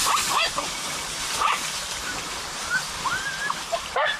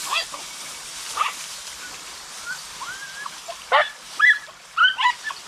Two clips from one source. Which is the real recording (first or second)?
second